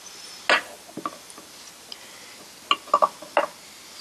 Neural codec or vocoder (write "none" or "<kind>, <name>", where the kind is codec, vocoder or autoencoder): none